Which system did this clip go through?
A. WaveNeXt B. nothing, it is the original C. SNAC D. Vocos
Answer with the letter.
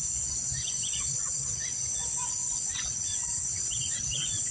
D